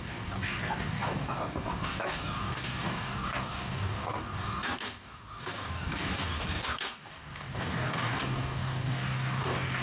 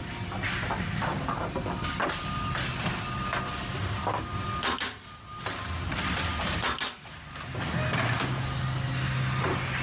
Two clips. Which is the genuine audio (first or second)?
second